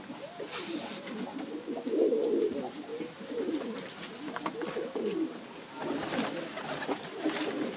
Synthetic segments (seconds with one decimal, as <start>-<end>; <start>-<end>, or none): none